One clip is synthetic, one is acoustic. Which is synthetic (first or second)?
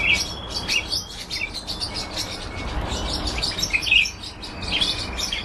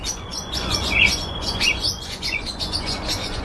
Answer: second